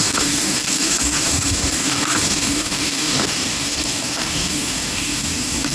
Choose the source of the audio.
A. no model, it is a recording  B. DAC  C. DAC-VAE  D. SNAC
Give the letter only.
B